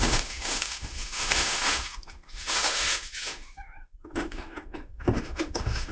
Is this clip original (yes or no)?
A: no